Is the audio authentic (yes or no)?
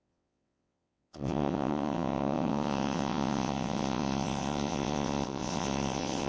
no